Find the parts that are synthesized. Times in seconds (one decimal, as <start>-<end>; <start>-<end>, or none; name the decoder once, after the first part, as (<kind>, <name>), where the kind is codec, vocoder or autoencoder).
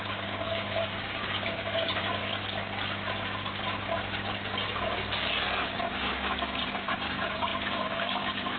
0.0-2.2 (codec, DAC); 5.6-8.6